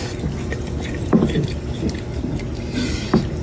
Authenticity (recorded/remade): recorded